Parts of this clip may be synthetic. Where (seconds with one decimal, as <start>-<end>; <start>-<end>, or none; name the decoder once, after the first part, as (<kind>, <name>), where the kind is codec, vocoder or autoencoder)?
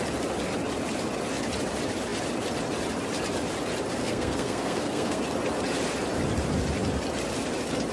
4.0-5.2 (codec, SNAC)